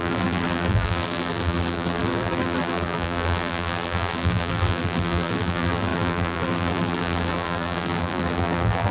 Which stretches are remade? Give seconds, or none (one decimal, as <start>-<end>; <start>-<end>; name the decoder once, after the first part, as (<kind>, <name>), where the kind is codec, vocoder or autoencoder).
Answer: 0.0-8.9 (vocoder, BigVGAN v2)